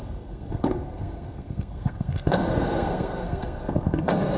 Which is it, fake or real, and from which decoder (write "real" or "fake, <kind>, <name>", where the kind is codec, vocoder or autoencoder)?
fake, codec, SNAC